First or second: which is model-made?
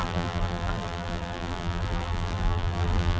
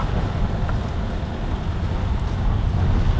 first